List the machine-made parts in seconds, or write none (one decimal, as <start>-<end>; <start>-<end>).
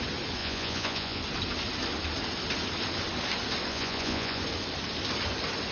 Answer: 0.4-1.2; 3.7-4.4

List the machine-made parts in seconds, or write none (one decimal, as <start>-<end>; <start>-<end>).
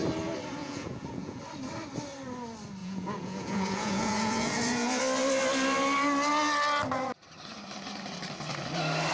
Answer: 0.6-1.4; 2.8-5.0